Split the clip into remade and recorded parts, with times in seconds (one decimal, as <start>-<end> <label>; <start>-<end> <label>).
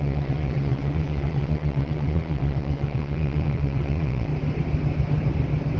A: 0.0-4.3 remade; 4.3-5.8 recorded